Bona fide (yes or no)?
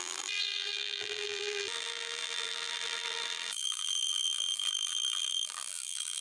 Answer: no